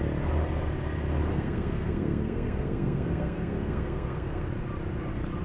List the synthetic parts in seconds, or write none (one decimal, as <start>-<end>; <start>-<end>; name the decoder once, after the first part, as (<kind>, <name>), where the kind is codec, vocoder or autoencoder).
1.3-4.5 (codec, SNAC)

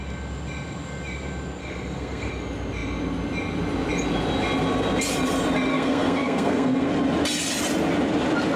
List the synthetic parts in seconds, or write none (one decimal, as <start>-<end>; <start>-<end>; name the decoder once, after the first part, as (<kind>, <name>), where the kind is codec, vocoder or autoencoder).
1.6-2.3 (codec, SNAC); 5.7-6.9

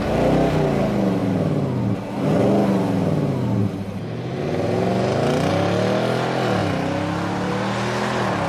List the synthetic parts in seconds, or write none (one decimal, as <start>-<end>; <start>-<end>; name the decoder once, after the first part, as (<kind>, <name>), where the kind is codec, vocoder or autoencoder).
none

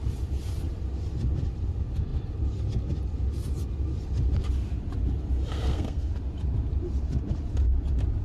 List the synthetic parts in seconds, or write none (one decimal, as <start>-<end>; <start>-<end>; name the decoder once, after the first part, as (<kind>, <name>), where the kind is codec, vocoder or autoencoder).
5.5-6.1 (codec, SNAC)

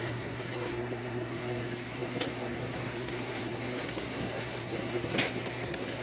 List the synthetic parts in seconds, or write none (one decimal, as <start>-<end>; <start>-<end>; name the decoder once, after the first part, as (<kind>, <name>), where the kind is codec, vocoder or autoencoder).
0.0-6.0 (codec, SNAC)